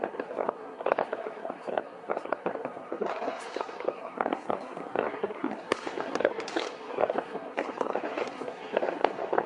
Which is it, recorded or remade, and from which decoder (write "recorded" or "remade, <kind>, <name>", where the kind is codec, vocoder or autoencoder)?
remade, codec, SNAC